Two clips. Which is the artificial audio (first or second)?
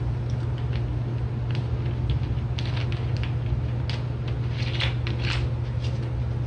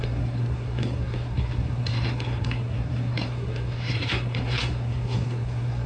second